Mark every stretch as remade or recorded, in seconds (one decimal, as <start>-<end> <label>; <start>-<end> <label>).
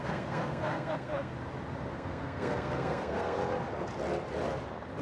0.0-1.3 remade; 1.3-1.9 recorded; 1.9-3.4 remade; 3.4-5.0 recorded